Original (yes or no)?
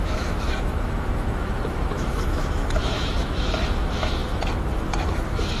no